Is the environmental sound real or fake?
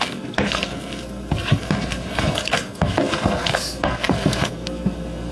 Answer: fake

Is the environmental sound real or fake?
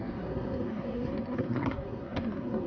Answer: fake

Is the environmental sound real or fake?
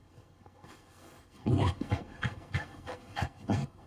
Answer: fake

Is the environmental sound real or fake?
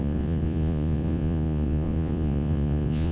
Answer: fake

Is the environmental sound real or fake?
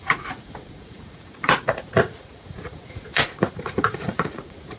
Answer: fake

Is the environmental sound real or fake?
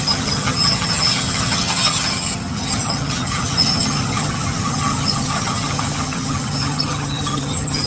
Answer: fake